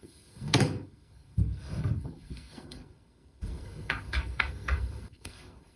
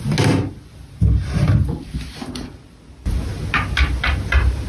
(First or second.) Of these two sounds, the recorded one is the second